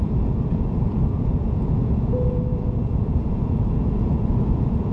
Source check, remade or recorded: remade